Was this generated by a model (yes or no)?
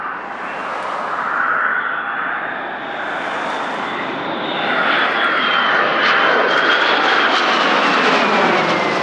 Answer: no